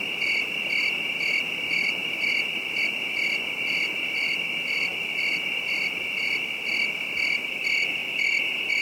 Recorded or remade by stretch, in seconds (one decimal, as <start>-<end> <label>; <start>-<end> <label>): 0.0-8.8 recorded